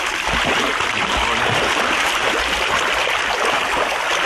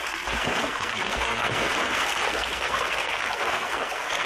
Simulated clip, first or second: second